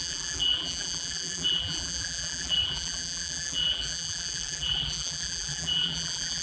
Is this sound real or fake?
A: fake